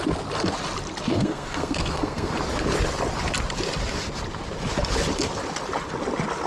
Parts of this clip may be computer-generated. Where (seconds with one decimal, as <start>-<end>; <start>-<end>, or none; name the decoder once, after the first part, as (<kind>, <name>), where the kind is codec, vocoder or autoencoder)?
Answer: 1.1-2.3 (codec, SNAC)

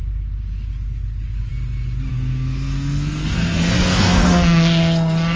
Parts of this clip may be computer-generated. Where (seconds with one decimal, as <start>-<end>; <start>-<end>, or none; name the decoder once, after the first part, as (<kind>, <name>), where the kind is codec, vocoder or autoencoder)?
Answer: 2.1-5.4 (codec, SNAC)

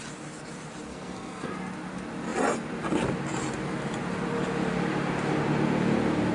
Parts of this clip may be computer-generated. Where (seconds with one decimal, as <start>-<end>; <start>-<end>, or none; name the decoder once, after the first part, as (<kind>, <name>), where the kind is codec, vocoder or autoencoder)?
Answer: 0.9-1.5 (codec, SNAC)